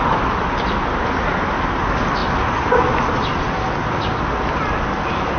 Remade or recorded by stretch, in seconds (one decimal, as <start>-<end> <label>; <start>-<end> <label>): 0.0-5.4 recorded